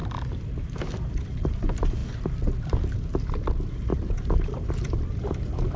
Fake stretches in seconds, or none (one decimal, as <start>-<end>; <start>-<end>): 0.0-2.0; 3.3-3.9; 4.7-5.8